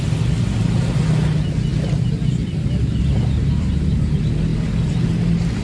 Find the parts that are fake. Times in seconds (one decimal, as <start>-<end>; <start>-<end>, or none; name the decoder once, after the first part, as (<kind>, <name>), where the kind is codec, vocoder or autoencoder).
none